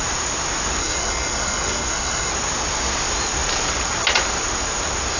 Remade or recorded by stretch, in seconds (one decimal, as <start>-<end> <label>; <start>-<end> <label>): 0.0-0.8 recorded; 0.8-2.3 remade; 2.3-5.2 recorded